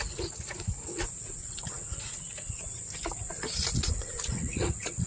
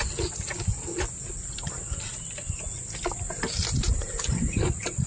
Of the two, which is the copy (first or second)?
first